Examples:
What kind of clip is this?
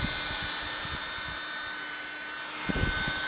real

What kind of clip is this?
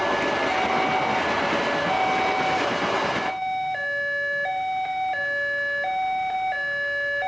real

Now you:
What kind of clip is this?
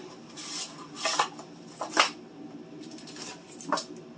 real